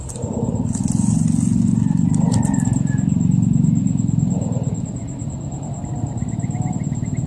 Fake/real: real